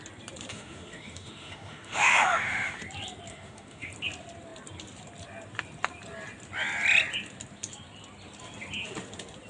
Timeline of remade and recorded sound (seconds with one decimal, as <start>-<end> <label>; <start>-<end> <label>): 0.0-0.5 recorded; 0.5-2.8 remade; 2.8-3.3 recorded; 3.3-3.9 remade; 3.9-9.5 recorded